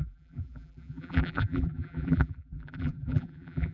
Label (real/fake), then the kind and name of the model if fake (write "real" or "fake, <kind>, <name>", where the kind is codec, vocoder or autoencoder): fake, vocoder, BigVGAN v2